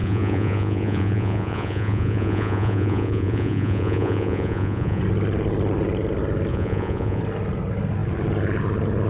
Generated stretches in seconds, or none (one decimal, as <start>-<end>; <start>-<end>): 0.0-5.0; 6.5-7.2